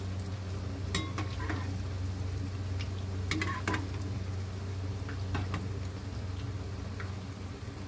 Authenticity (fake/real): real